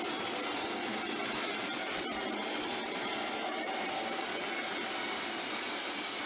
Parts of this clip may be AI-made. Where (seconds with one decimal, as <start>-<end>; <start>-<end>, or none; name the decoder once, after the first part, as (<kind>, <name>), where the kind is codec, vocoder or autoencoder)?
none